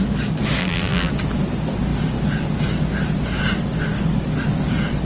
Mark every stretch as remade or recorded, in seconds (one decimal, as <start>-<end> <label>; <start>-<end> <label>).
0.0-0.6 recorded; 0.6-1.1 remade; 1.1-5.0 recorded